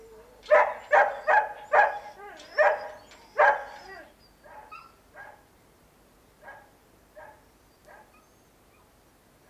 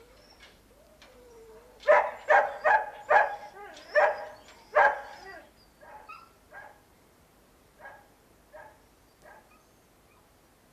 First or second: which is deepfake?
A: second